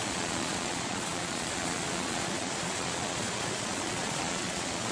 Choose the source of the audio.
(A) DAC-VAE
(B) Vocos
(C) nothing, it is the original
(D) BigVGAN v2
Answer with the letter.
B